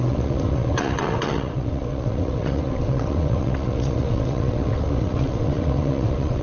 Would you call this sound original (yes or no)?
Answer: no